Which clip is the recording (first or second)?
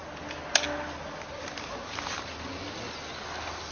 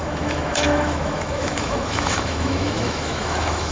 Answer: first